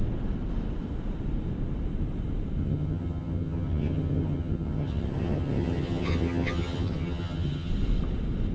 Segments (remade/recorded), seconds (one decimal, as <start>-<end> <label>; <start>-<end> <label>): 0.0-2.6 recorded; 2.6-7.7 remade; 7.7-8.5 recorded